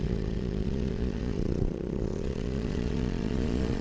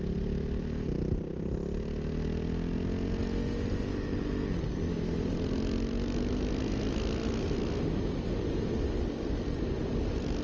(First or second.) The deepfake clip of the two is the first